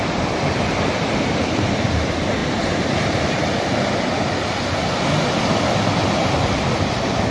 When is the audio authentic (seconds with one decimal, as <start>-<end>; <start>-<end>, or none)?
2.4-3.1